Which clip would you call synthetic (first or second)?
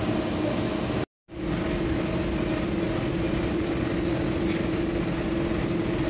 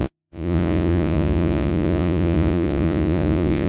second